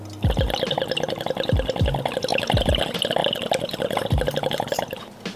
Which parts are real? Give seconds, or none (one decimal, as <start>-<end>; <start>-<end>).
0.0-2.3; 2.8-5.4